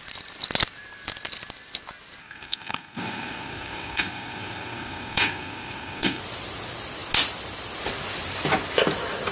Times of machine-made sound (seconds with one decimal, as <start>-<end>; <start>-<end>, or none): 2.2-6.2